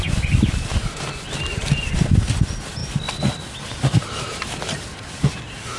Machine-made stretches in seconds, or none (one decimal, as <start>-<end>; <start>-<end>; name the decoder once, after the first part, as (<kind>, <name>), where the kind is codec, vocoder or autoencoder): none